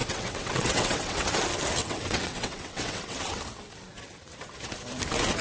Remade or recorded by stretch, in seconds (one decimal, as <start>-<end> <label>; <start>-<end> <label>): 0.0-1.4 remade; 1.4-1.8 recorded; 1.8-3.4 remade; 3.4-5.4 recorded